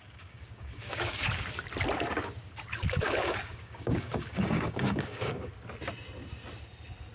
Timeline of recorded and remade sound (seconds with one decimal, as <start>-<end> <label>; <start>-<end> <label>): 0.0-1.3 remade; 1.3-2.7 recorded; 2.7-5.5 remade; 5.5-7.1 recorded